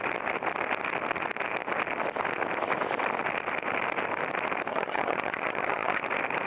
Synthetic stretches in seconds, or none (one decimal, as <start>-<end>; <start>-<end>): 4.7-6.0